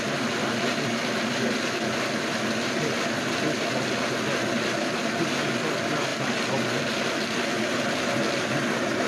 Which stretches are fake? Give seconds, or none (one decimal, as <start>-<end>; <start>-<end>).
none